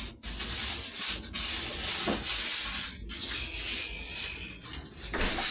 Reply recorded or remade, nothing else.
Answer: recorded